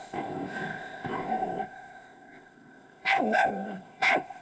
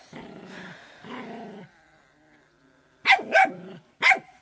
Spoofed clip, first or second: first